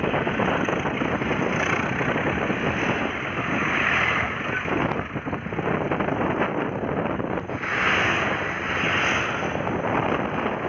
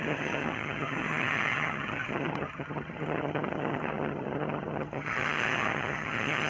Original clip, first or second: first